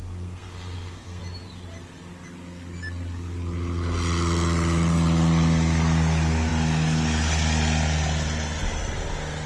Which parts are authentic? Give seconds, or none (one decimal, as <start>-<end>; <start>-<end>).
1.2-9.5